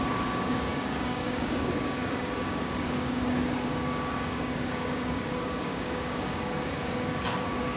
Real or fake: fake